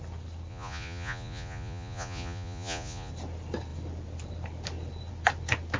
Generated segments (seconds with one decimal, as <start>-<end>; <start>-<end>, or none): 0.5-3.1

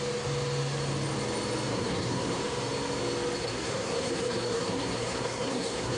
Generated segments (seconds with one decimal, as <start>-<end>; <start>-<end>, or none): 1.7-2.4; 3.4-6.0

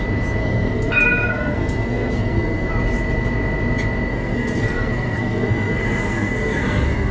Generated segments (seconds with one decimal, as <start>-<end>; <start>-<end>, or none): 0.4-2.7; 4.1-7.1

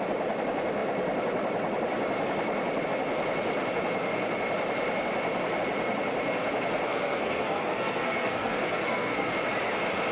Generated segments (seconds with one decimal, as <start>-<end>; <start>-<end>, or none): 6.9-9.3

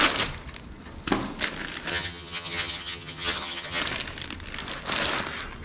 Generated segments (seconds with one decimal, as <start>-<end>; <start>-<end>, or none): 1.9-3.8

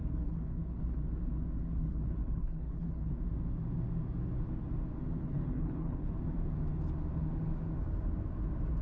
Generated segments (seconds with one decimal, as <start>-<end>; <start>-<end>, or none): 0.0-1.0; 1.7-3.1; 5.2-6.1

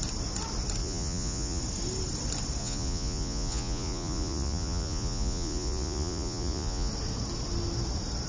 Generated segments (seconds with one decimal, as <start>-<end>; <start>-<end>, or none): 0.8-1.6; 2.6-6.9